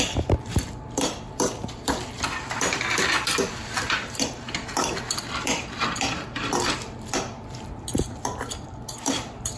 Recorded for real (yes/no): no